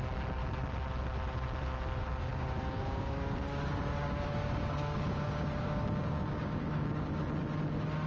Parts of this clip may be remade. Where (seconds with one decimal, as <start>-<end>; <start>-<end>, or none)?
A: 2.3-7.2